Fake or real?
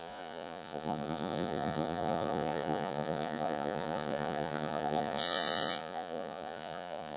fake